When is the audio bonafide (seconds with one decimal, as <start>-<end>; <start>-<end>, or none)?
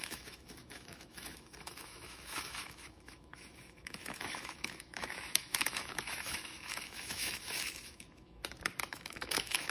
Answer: 8.4-8.9